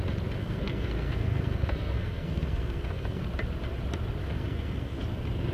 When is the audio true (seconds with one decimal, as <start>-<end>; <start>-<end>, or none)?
0.0-0.4; 3.2-4.2; 5.0-5.5